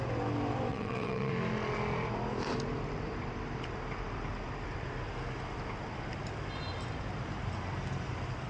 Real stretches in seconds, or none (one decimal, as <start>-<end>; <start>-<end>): 0.0-0.7; 1.3-8.5